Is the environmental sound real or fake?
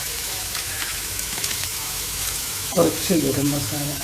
fake